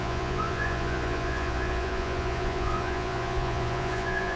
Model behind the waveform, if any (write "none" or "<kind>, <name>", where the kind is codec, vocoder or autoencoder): vocoder, Vocos